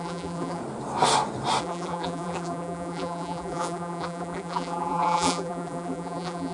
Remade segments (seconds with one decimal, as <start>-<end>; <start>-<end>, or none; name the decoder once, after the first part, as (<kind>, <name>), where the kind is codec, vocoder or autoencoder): 0.0-0.6 (vocoder, BigVGAN v2); 1.6-6.5